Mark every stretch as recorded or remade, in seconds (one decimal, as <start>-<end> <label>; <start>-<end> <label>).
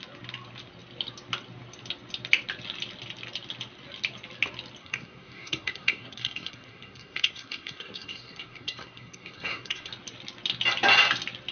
0.0-4.8 recorded; 4.8-9.9 remade; 9.9-11.5 recorded